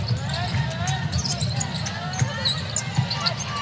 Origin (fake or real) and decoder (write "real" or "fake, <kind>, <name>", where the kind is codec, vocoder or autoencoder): real